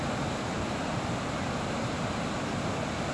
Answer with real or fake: real